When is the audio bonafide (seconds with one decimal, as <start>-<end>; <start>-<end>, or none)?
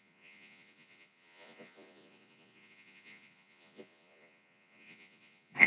none